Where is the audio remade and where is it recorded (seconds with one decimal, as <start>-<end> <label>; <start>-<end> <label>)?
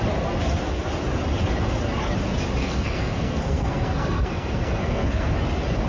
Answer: 0.0-2.6 recorded; 2.6-5.3 remade; 5.3-5.9 recorded